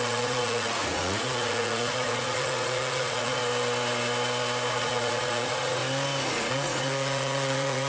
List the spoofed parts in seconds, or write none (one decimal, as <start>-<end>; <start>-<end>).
0.0-3.4; 4.7-5.8; 6.4-7.9